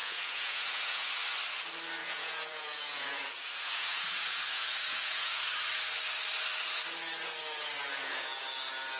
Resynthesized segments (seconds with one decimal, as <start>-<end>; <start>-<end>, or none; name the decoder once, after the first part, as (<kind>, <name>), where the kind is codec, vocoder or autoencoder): 0.0-1.1 (vocoder, Vocos); 2.0-5.4